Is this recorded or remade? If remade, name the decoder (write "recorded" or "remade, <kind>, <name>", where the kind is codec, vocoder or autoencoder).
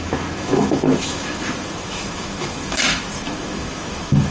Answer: remade, autoencoder, DAC-VAE